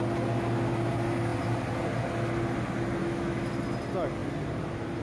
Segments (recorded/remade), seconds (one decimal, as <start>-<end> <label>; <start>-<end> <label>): 0.0-3.0 recorded; 3.0-3.5 remade; 3.5-5.0 recorded